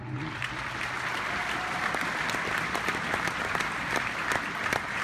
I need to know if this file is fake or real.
real